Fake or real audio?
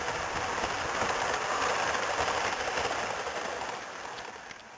real